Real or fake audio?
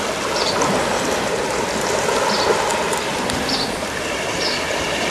real